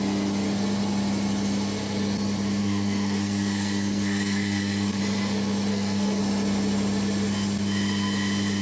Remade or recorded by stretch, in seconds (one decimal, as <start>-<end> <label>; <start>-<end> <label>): 0.0-2.6 recorded; 2.6-5.0 remade; 5.0-5.7 recorded; 5.7-6.2 remade; 6.2-8.6 recorded